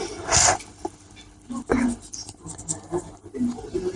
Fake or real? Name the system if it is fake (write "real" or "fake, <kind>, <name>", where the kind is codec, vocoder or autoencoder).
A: real